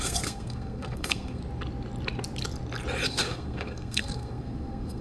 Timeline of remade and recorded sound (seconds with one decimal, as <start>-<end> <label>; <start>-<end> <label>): 0.0-1.4 remade; 1.4-3.1 recorded; 3.1-5.0 remade